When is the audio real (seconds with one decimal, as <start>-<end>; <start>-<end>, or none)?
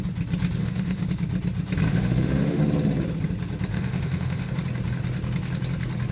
0.0-0.6; 1.1-1.9; 2.6-3.7; 4.5-6.1